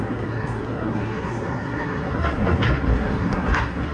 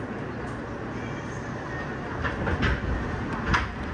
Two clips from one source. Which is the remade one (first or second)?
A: first